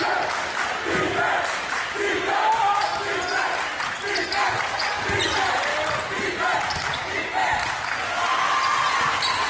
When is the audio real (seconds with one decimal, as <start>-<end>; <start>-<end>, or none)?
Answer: 0.0-9.5